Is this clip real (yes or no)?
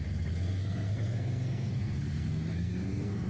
no